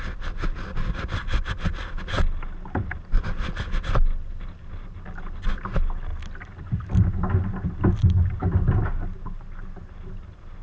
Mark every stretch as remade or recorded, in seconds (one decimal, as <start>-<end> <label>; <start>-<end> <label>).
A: 0.0-10.6 recorded